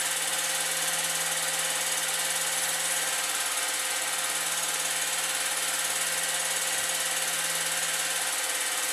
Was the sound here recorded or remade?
recorded